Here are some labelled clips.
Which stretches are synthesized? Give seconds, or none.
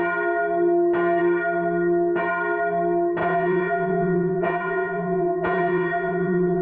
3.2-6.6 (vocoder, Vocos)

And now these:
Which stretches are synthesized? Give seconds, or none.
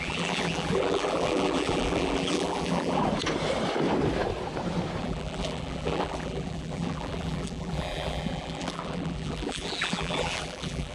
0.0-3.0 (vocoder, BigVGAN v2); 5.0-10.9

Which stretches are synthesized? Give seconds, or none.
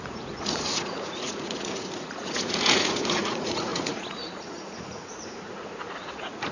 0.0-6.5 (vocoder, Vocos)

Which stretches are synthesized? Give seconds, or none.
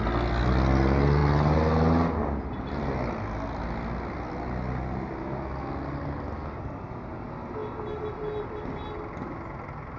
none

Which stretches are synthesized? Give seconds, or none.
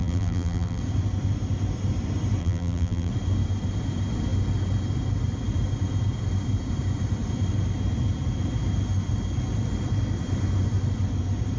0.0-0.8 (vocoder, BigVGAN v2); 2.4-3.1